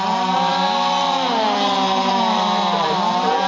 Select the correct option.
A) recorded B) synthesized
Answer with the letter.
B